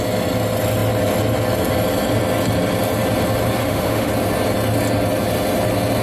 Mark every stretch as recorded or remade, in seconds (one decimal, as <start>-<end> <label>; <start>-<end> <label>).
0.0-3.6 recorded; 3.6-4.1 remade; 4.1-6.0 recorded